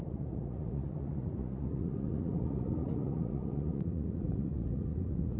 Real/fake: fake